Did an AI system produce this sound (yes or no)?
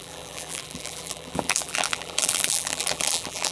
yes